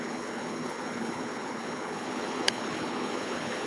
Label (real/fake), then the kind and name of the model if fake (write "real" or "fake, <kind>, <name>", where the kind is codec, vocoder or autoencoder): fake, codec, HILCodec